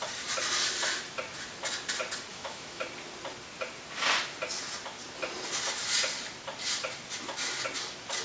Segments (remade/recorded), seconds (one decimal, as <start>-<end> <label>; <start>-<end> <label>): 0.0-2.3 recorded; 2.3-2.8 remade; 2.8-8.2 recorded